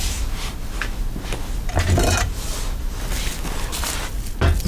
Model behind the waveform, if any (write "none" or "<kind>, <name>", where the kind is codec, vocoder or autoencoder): none